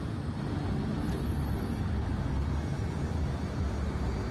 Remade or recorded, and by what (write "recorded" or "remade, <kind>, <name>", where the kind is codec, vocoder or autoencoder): recorded